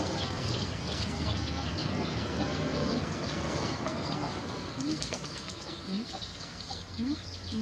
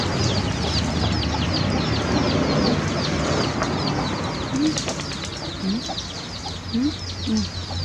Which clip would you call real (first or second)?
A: second